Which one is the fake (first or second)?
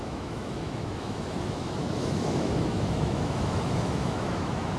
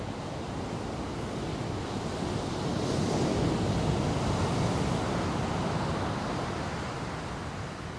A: first